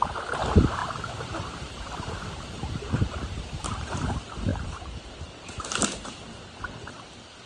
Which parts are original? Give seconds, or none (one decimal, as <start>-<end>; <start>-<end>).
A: 0.0-0.8; 4.1-4.5; 5.5-7.5